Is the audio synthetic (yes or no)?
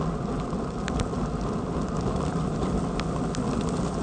no